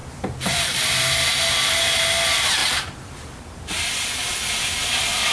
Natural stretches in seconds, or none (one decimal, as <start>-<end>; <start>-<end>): 1.4-2.6; 4.3-5.3